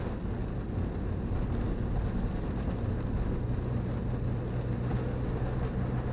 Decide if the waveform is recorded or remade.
recorded